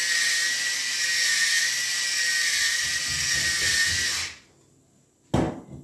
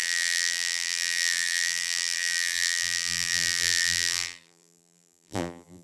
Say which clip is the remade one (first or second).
second